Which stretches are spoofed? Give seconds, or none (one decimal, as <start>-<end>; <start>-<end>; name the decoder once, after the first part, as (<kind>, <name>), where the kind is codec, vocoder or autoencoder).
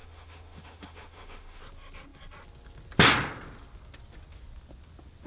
0.0-1.6 (autoencoder, DAC-VAE)